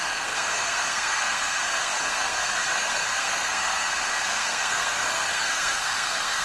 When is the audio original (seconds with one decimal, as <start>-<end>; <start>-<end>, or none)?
none